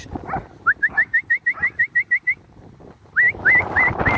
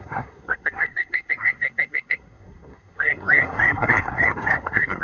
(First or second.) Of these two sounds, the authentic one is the first